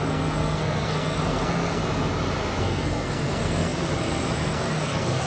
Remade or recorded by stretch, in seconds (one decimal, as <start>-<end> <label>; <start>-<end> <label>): 0.0-1.8 remade; 1.8-2.6 recorded; 2.6-5.3 remade